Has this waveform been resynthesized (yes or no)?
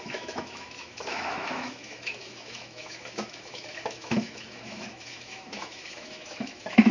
yes